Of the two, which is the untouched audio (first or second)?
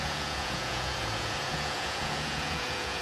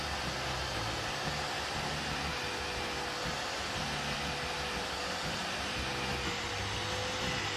second